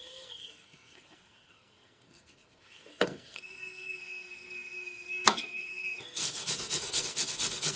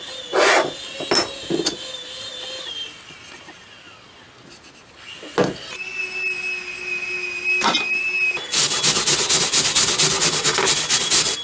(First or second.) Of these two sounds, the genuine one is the second